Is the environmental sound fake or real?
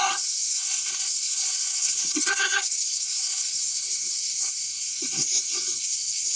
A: fake